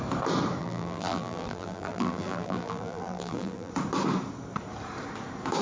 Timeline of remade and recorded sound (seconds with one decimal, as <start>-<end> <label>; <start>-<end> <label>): 0.0-0.6 recorded; 0.6-3.7 remade; 3.7-5.6 recorded